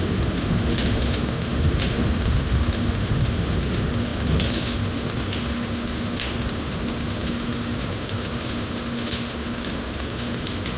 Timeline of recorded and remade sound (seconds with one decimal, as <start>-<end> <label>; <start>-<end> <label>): 0.0-10.8 remade